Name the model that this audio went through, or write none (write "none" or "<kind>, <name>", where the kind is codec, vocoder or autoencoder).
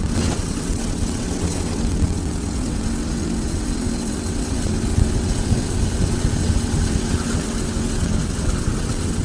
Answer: vocoder, WaveNeXt